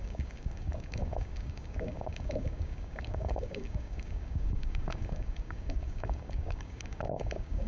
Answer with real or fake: fake